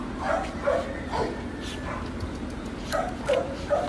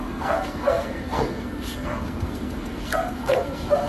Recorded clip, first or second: first